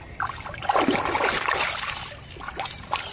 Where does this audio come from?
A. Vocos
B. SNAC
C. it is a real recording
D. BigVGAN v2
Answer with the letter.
C